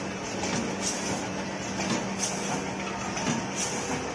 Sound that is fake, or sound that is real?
real